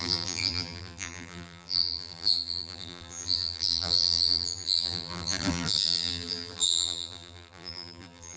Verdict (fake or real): fake